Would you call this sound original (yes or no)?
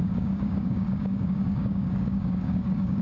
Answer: no